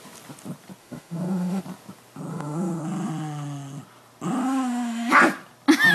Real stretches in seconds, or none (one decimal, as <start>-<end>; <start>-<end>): 0.0-0.8; 1.6-2.3; 2.8-4.4; 5.1-5.9